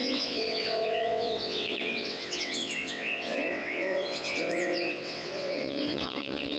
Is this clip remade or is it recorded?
remade